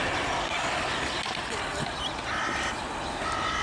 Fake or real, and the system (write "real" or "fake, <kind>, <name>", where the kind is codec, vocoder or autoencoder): real